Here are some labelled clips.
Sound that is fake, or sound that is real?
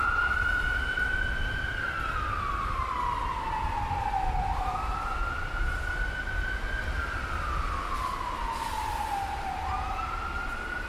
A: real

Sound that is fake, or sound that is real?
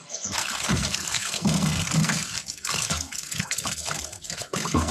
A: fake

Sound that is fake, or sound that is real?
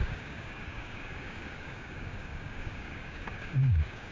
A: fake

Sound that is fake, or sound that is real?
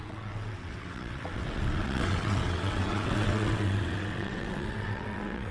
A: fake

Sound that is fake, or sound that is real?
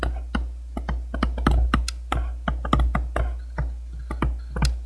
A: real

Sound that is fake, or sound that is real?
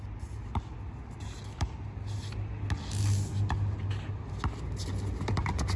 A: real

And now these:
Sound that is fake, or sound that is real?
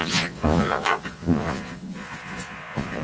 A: fake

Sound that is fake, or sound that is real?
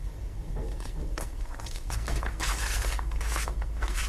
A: fake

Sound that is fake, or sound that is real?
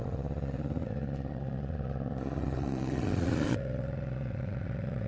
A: fake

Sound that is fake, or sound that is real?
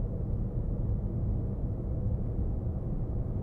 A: real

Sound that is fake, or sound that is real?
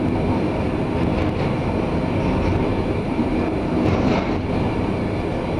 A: real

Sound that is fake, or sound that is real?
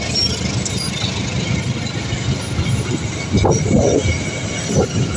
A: real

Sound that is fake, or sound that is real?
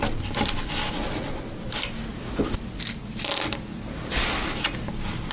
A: real